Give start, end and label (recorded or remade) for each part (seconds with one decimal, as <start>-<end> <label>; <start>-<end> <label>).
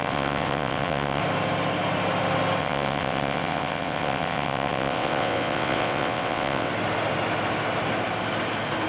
0.0-1.2 remade; 1.2-2.6 recorded; 2.6-6.7 remade; 6.7-8.9 recorded